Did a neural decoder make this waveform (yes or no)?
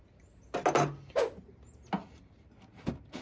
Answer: no